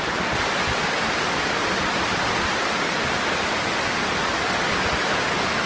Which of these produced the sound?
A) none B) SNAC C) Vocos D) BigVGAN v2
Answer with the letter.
A